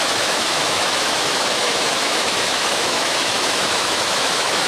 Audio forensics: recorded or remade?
remade